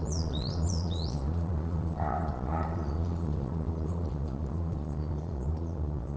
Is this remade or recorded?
remade